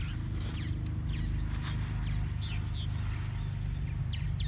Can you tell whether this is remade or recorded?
recorded